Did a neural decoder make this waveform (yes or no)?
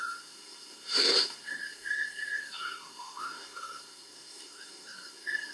yes